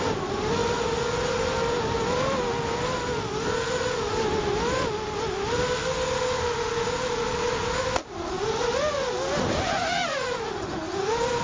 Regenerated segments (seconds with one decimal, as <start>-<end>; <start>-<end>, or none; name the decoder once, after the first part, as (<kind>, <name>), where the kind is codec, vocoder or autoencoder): none